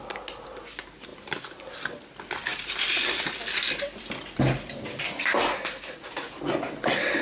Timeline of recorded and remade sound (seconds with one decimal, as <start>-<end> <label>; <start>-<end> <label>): 0.0-1.1 recorded; 1.1-2.0 remade; 2.0-2.5 recorded; 2.5-5.4 remade; 5.4-7.2 recorded